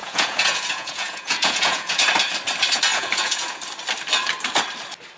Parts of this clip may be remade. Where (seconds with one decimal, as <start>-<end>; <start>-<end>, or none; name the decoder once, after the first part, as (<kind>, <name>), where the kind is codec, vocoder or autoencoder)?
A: 0.0-1.9 (vocoder, Vocos); 2.9-3.6